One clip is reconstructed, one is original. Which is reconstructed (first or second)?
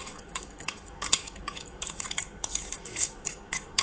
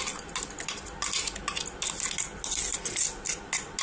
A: first